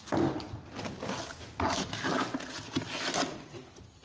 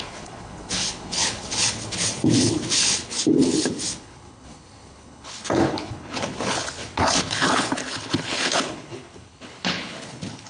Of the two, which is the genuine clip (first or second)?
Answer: first